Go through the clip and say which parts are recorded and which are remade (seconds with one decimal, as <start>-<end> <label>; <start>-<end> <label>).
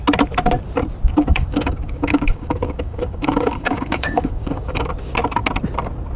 0.0-1.3 recorded; 1.3-4.9 remade; 4.9-6.2 recorded